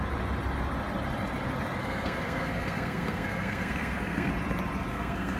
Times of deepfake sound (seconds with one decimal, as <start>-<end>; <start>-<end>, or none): 1.8-4.3; 4.9-5.4